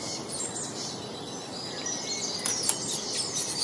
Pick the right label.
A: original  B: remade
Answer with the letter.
A